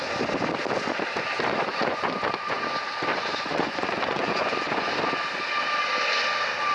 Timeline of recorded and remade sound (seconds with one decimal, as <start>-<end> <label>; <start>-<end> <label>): 0.0-1.7 recorded; 1.7-2.6 remade; 2.6-3.1 recorded; 3.1-4.9 remade; 4.9-6.7 recorded